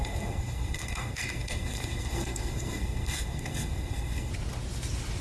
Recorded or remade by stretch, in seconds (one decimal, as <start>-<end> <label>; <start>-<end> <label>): 0.0-4.3 remade; 4.3-5.2 recorded